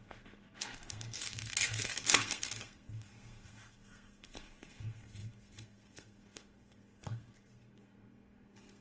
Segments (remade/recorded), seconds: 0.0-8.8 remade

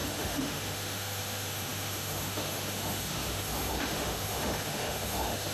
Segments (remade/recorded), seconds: 0.0-5.5 remade

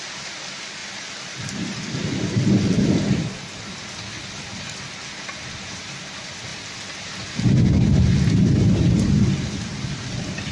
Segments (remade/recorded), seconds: 0.0-10.5 recorded

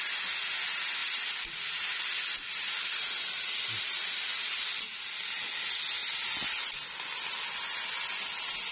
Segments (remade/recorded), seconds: 0.0-8.7 recorded